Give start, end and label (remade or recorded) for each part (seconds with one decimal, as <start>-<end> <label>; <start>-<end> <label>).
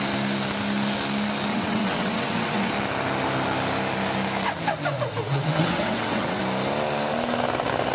0.0-1.5 recorded; 1.5-2.7 remade; 2.7-5.2 recorded; 5.2-6.4 remade; 6.4-7.9 recorded